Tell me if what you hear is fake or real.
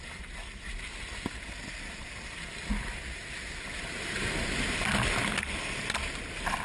real